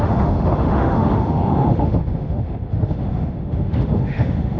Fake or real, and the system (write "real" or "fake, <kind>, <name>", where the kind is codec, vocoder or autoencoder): fake, autoencoder, DAC-VAE